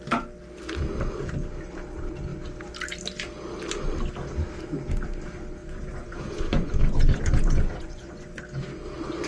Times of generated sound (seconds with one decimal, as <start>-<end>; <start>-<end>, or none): 5.6-8.4